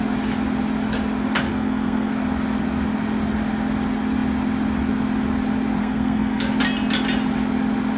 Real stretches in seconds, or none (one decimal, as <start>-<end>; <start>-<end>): 0.0-1.5; 2.1-5.8; 6.4-8.0